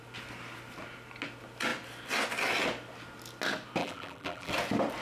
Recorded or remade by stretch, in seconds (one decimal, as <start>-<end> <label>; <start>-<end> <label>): 0.0-3.8 recorded; 3.8-4.5 remade; 4.5-5.0 recorded